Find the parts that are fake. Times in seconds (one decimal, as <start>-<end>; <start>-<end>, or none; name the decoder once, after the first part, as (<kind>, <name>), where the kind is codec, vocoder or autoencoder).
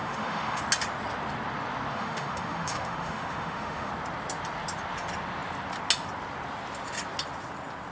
0.0-0.6 (autoencoder, DAC-VAE); 1.9-3.9